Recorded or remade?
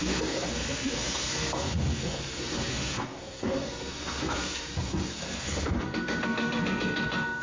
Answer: remade